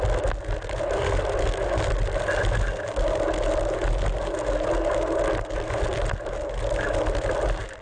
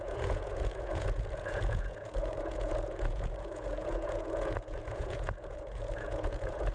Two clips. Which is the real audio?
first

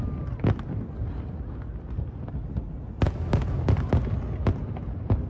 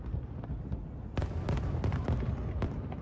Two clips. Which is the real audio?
first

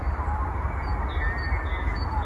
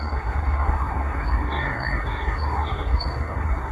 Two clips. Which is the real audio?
first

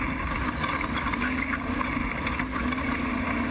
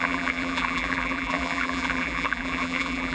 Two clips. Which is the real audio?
first